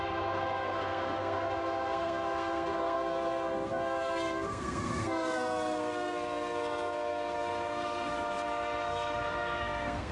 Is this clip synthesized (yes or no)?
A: yes